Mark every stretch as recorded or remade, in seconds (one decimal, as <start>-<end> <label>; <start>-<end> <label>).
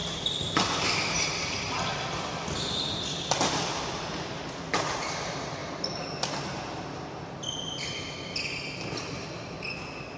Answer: 0.0-10.2 recorded